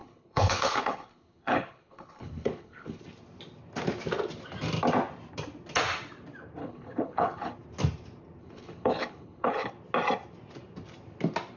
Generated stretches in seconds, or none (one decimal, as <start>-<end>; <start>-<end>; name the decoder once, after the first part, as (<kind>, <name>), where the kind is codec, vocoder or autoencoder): 0.0-3.0 (codec, HILCodec); 6.6-7.5; 8.4-9.7